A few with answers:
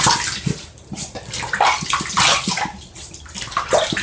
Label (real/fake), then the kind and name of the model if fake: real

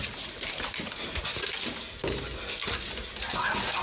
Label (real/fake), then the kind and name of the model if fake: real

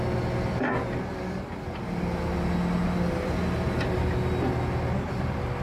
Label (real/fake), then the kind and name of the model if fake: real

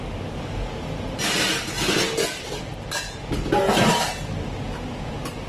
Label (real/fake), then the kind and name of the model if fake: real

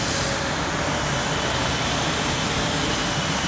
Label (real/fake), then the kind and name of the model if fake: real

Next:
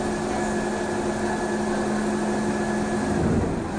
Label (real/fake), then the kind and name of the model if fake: real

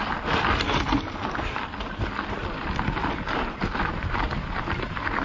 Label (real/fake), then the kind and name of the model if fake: real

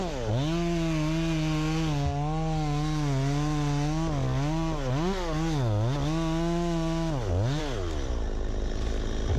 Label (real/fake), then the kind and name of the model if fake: real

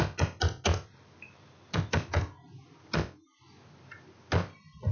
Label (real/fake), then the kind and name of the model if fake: real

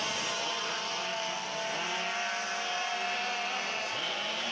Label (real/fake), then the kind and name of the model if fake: real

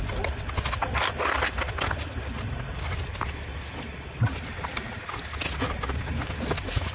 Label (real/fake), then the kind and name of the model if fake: real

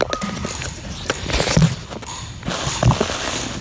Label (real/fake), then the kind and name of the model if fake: real